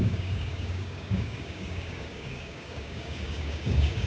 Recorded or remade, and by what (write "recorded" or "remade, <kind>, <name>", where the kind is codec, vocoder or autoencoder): remade, codec, DAC